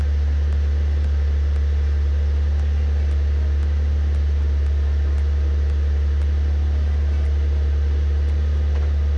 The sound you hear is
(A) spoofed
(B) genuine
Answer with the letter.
B